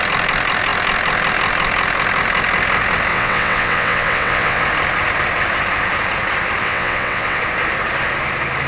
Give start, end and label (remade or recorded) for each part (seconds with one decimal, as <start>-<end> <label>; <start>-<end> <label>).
0.0-3.1 recorded; 3.1-4.6 remade; 4.6-6.6 recorded; 6.6-7.4 remade; 7.4-8.7 recorded

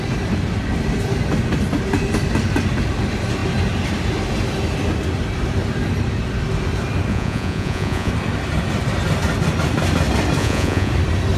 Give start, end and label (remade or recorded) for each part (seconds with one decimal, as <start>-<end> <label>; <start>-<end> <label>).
0.0-7.1 recorded; 7.1-8.1 remade; 8.1-10.4 recorded; 10.4-10.9 remade; 10.9-11.4 recorded

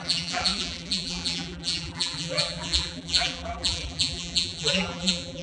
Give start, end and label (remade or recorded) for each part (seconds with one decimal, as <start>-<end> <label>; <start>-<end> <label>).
0.0-5.4 remade

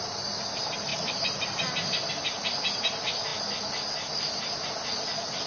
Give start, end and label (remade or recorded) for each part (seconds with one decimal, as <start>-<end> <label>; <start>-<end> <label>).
0.0-0.9 recorded; 0.9-2.1 remade; 2.1-5.5 recorded

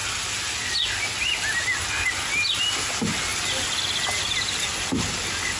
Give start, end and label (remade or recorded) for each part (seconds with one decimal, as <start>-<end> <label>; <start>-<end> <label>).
0.0-5.6 recorded

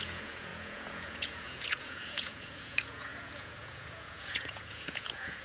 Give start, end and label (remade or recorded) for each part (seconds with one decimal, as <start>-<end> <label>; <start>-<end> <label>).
0.0-5.4 remade

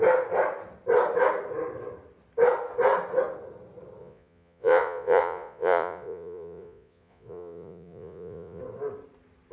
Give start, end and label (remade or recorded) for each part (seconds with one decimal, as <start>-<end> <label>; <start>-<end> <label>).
0.0-4.0 recorded; 4.0-8.6 remade; 8.6-9.5 recorded

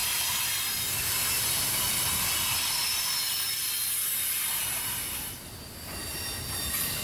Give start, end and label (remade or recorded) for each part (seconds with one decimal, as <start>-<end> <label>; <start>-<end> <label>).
0.0-7.0 recorded